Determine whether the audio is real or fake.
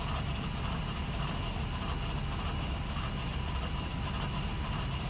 real